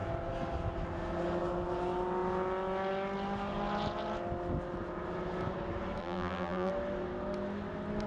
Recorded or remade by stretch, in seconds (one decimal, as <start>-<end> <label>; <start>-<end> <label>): 0.0-6.0 recorded; 6.0-6.7 remade; 6.7-8.1 recorded